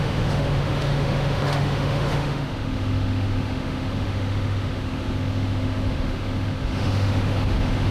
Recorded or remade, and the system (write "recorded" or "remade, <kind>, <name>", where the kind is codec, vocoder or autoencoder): remade, autoencoder, DAC-VAE